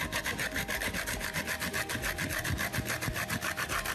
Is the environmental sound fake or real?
real